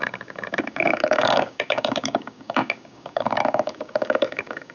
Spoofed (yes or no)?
yes